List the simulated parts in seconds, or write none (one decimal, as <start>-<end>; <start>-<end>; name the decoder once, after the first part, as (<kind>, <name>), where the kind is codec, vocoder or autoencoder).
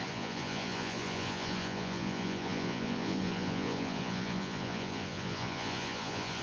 0.0-6.4 (vocoder, Vocos)